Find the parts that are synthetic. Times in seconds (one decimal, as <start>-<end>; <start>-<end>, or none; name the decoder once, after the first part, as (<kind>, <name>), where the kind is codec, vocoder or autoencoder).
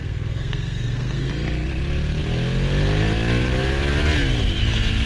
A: 0.0-1.3 (codec, SNAC)